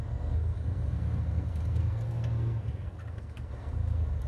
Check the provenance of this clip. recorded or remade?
remade